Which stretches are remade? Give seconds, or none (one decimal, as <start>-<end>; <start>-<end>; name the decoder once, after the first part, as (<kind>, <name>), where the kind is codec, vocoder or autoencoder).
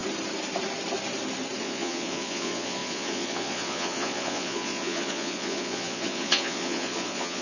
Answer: 1.6-7.4 (vocoder, Vocos)